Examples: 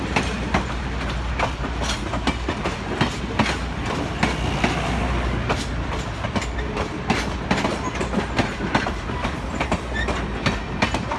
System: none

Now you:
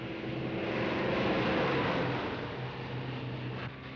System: none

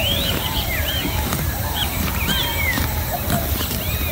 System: vocoder, BigVGAN v2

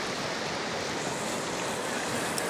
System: none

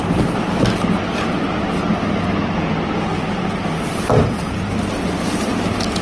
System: none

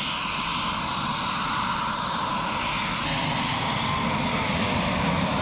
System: none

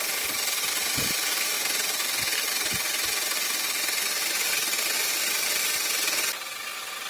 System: none